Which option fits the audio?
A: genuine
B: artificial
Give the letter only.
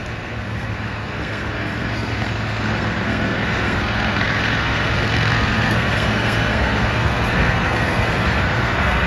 B